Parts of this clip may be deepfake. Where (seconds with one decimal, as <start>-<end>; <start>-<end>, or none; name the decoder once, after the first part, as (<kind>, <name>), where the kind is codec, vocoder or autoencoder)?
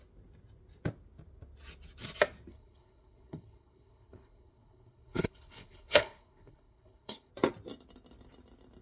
2.5-7.3 (codec, HILCodec)